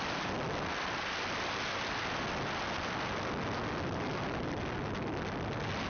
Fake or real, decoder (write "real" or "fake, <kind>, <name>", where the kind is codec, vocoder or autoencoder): real